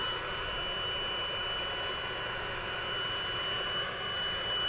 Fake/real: real